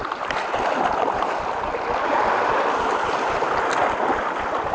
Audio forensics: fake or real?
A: real